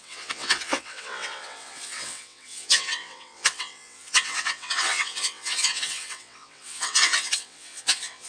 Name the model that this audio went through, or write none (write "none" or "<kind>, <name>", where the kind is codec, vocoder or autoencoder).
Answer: vocoder, WaveNeXt